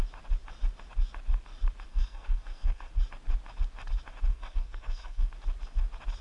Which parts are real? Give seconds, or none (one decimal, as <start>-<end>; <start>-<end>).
0.0-1.9; 2.9-4.3; 5.3-6.2